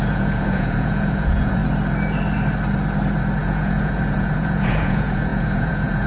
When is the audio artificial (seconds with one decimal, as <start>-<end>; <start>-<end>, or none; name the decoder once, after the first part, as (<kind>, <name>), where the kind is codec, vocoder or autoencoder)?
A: 0.0-1.6 (vocoder, Vocos); 3.4-6.1